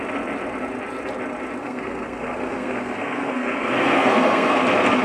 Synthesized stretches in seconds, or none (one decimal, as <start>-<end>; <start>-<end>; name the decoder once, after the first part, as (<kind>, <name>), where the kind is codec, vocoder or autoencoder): 1.6-4.6 (codec, SNAC)